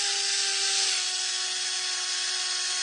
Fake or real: real